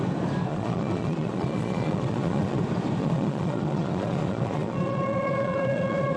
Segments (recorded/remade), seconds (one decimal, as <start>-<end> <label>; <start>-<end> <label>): 0.0-0.5 recorded; 0.5-2.6 remade; 2.6-3.0 recorded; 3.0-6.2 remade